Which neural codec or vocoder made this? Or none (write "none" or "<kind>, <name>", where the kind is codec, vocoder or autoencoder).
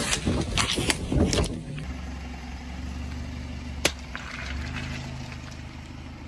none